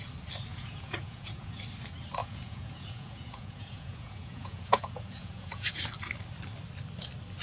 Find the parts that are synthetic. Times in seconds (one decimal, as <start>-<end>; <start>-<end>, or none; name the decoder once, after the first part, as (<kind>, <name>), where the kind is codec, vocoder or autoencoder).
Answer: 0.5-1.6 (vocoder, Vocos); 2.2-5.7